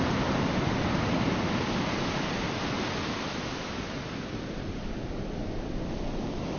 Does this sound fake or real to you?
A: real